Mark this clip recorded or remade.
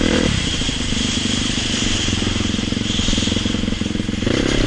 remade